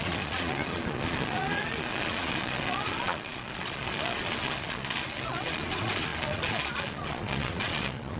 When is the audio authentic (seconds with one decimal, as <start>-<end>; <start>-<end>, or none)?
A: none